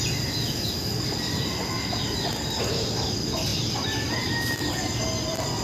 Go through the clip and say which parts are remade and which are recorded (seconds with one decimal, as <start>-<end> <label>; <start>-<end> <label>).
0.0-5.6 recorded